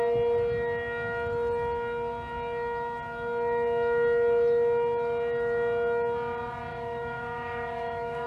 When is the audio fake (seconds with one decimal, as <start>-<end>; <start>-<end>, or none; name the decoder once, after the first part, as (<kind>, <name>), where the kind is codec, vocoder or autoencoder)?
6.7-8.3 (autoencoder, DAC-VAE)